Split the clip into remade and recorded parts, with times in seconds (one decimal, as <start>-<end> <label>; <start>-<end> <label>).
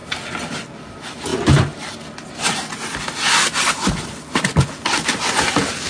0.0-5.9 recorded